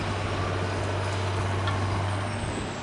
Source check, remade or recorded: recorded